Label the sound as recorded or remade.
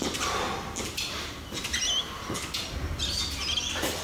recorded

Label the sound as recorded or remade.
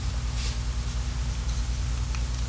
recorded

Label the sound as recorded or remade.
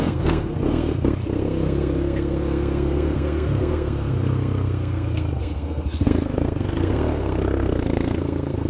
remade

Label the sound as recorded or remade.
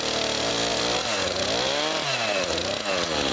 recorded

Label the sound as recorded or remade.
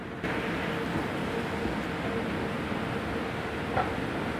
recorded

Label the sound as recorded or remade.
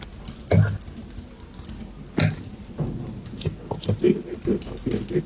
recorded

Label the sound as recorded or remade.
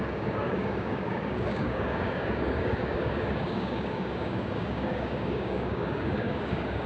remade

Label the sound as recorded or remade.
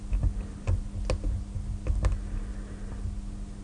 recorded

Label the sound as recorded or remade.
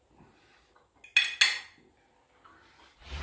recorded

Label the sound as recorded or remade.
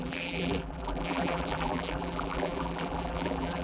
remade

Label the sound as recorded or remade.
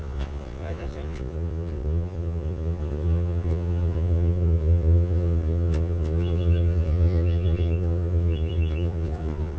remade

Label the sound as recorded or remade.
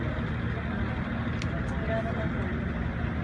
recorded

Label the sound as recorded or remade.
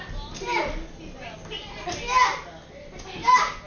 recorded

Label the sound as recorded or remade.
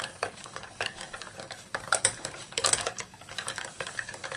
remade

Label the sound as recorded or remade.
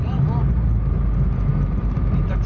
recorded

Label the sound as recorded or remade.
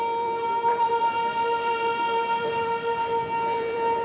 remade